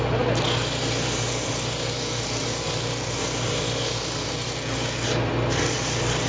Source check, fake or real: real